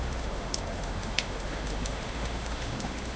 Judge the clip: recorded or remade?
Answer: remade